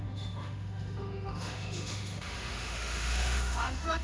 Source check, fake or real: fake